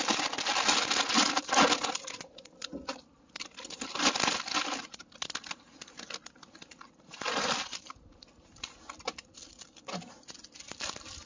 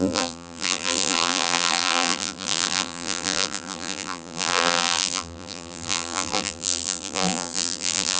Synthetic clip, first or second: second